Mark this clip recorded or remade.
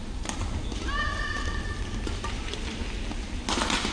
recorded